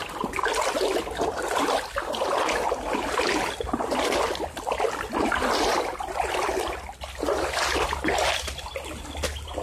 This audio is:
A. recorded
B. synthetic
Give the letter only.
A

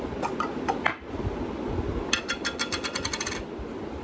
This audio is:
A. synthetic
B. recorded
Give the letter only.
B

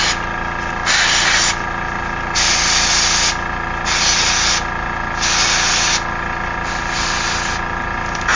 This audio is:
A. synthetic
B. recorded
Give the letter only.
B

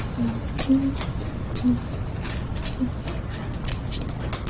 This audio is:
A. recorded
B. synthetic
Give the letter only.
A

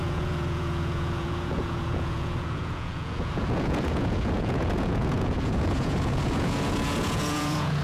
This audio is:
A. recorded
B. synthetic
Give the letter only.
B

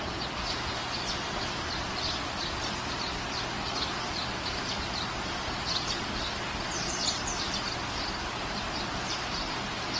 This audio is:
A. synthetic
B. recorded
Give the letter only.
B